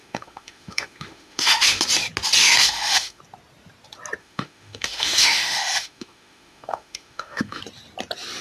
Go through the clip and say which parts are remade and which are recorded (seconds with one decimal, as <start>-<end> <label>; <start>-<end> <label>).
0.0-1.8 remade; 1.8-2.4 recorded; 2.4-3.2 remade; 3.2-4.2 recorded; 4.2-7.6 remade; 7.6-8.4 recorded